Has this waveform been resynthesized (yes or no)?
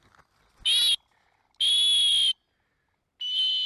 no